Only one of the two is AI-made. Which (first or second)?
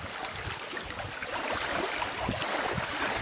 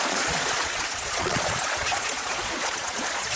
second